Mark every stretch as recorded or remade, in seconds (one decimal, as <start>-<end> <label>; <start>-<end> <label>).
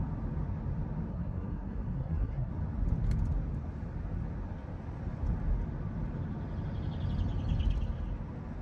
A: 0.0-1.1 recorded; 1.1-2.5 remade; 2.5-8.6 recorded